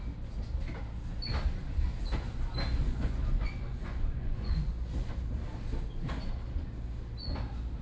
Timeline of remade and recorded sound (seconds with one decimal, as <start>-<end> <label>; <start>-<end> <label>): 0.0-2.8 recorded; 2.8-5.1 remade; 5.1-7.8 recorded